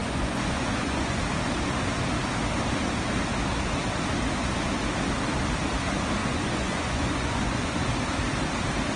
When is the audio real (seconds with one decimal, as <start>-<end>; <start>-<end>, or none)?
1.2-6.2; 7.8-9.0